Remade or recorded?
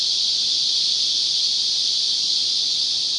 recorded